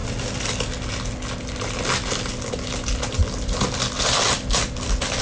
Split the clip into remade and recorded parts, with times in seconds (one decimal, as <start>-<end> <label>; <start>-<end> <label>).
0.0-5.2 recorded